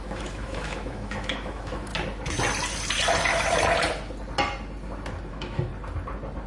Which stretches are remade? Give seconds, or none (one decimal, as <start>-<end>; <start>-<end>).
0.0-1.9; 5.3-5.7